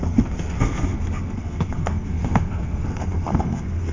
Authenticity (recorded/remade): remade